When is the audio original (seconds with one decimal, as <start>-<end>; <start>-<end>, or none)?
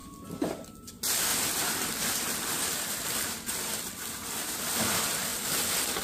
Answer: 0.9-1.3; 4.8-6.0